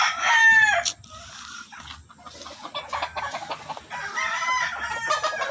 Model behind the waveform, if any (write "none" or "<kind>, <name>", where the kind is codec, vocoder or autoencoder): none